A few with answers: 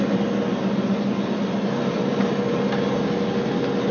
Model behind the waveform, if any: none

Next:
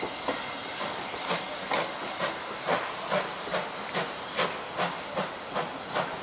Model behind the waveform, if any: none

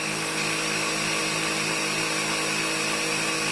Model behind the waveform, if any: none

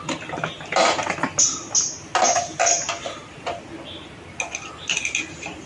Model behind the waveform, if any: none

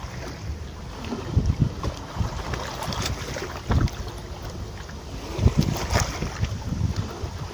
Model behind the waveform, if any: none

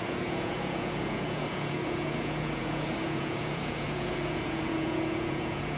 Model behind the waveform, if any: vocoder, Vocos